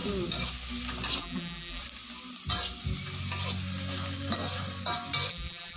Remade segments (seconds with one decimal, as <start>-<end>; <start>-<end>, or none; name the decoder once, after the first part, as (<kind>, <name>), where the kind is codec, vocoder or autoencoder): 1.2-1.8 (vocoder, BigVGAN v2); 5.3-5.8